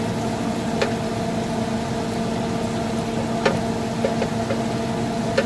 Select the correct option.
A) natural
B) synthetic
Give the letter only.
A